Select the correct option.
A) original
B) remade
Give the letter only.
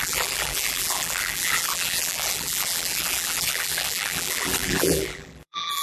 B